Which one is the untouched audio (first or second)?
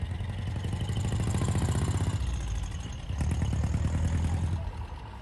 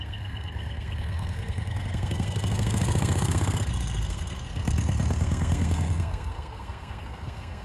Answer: first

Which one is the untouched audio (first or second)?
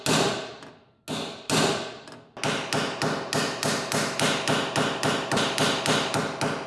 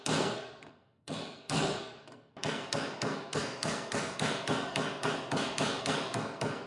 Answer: first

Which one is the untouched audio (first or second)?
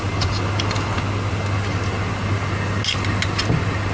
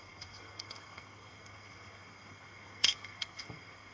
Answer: first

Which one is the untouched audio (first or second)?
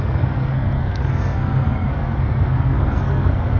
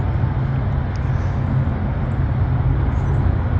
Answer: second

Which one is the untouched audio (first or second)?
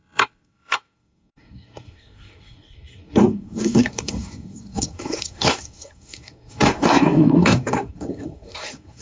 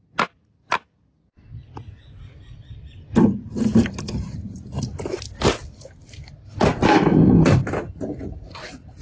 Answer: second